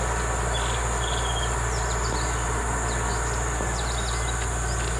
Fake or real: real